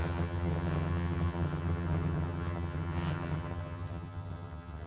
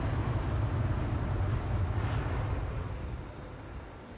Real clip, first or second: second